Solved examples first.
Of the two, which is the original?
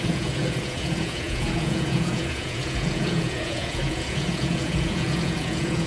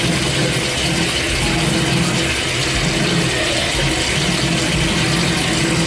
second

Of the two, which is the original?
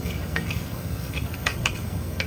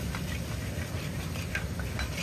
second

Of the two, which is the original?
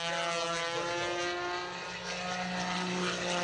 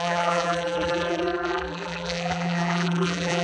first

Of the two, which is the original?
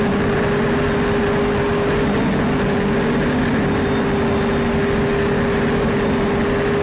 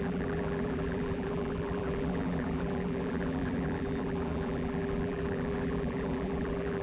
first